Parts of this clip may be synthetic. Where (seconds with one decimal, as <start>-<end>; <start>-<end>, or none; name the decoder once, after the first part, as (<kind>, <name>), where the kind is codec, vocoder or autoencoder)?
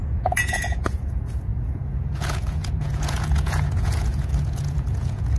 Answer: 0.0-5.4 (vocoder, Vocos)